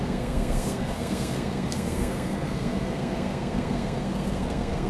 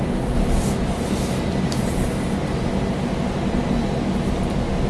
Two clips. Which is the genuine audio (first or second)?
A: second